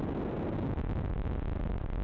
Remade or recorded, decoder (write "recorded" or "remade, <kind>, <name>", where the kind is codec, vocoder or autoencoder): recorded